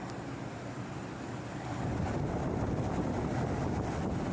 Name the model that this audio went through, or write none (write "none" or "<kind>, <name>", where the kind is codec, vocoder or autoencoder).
none